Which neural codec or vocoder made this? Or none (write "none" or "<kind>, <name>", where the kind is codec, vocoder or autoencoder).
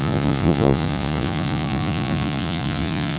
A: vocoder, Vocos